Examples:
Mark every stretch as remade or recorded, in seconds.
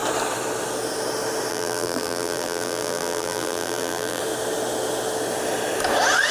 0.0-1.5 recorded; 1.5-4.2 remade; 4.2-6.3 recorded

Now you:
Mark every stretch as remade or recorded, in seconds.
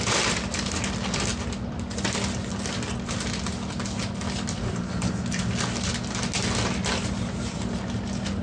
0.0-8.4 recorded